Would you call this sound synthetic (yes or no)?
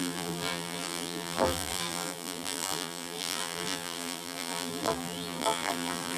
yes